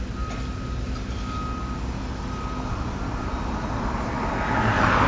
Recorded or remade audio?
recorded